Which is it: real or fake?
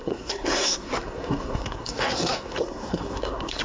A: fake